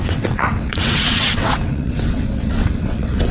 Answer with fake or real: fake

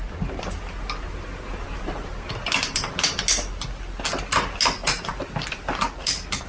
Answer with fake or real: real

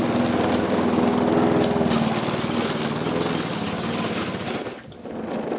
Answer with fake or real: real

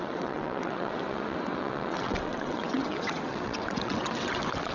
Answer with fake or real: fake